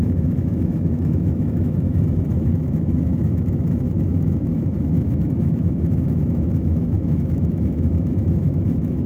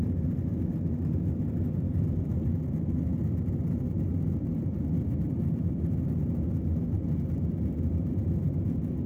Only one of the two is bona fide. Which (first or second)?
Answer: second